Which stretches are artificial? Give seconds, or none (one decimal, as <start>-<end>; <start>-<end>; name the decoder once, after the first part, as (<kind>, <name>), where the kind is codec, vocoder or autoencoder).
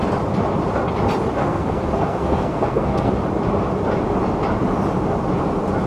1.4-3.1 (codec, SNAC)